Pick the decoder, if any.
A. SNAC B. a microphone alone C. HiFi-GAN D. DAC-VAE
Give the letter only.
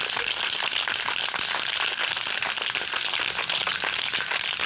B